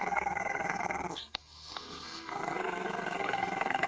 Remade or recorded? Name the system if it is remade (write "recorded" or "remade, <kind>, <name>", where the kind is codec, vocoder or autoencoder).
remade, codec, SNAC